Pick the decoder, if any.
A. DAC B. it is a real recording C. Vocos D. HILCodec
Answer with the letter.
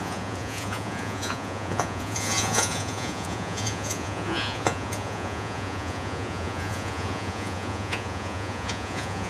C